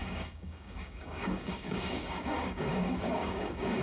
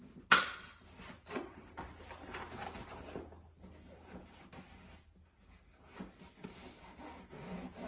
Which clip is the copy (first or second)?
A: first